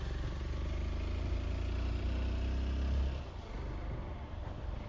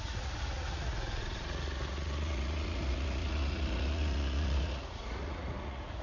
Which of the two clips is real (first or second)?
first